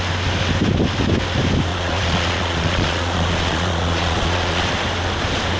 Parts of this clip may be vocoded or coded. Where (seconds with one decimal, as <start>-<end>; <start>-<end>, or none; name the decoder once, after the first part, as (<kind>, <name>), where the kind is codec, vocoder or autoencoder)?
1.7-4.7 (vocoder, Vocos)